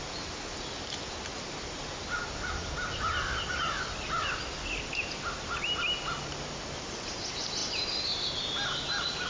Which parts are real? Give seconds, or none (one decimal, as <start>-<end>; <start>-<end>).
0.0-9.3

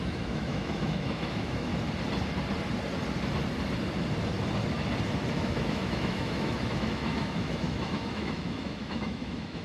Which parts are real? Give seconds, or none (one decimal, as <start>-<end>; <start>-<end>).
1.7-5.3

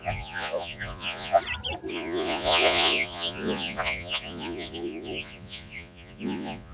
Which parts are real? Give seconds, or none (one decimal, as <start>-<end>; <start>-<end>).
1.4-1.9

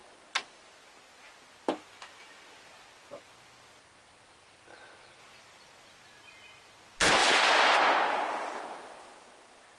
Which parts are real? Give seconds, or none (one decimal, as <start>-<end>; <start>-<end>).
0.0-7.2; 8.9-9.8

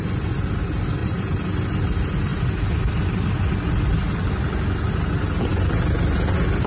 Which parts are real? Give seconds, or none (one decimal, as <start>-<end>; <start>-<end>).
0.0-6.7

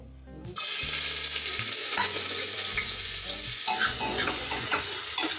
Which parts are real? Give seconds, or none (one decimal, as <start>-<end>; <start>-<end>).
0.0-1.8; 5.0-5.4

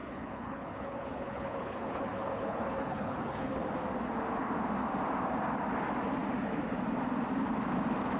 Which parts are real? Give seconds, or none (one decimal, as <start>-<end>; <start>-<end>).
3.6-8.2

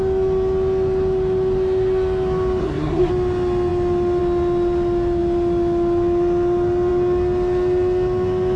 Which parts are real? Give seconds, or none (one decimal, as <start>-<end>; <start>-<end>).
0.0-2.6; 3.1-8.6